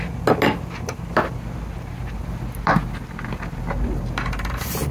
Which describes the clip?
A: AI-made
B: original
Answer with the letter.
B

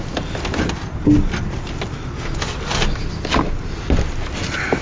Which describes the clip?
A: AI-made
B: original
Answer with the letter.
B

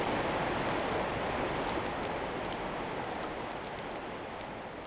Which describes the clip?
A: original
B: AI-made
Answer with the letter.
A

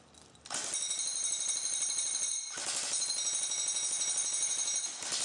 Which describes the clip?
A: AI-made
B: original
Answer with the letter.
B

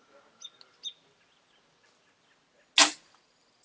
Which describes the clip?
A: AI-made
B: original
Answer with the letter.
B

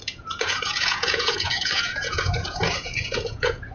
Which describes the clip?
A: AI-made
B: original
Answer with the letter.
A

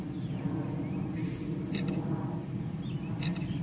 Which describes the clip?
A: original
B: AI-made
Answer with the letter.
A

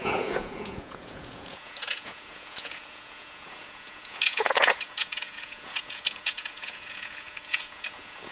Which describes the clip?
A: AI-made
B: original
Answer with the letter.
A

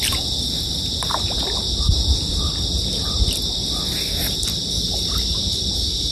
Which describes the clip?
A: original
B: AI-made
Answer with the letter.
A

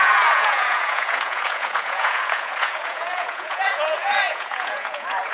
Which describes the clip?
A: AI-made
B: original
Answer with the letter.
A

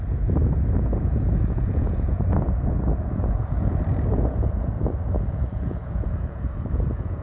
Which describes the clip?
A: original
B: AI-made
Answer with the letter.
B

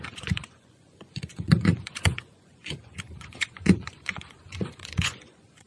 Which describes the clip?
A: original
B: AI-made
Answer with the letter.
B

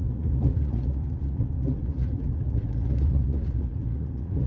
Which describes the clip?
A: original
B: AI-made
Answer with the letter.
B